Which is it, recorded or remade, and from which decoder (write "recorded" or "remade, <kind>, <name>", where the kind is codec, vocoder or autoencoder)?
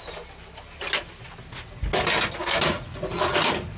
recorded